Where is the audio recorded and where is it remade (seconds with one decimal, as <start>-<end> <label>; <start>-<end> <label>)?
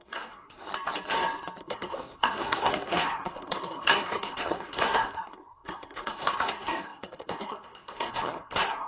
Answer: 0.0-0.7 remade; 0.7-1.6 recorded; 1.6-8.9 remade